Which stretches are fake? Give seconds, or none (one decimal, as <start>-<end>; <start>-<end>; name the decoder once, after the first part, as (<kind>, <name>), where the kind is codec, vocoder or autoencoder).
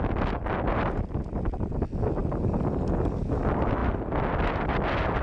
none